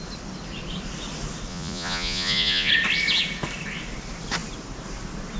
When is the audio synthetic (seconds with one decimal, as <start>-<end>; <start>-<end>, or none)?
1.5-2.7